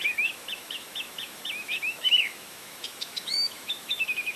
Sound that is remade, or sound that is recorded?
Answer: remade